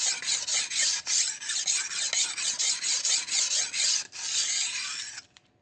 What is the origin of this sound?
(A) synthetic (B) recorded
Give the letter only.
B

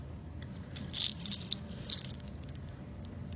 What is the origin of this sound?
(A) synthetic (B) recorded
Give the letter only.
B